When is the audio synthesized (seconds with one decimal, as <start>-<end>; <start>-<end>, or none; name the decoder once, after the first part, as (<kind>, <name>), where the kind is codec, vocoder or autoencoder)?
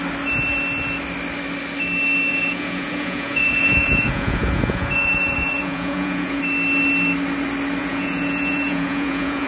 2.3-6.4 (vocoder, Vocos); 7.8-9.5